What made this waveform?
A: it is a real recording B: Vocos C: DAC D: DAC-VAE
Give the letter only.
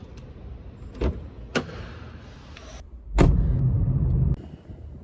A